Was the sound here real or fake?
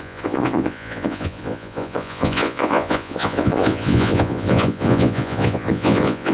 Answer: fake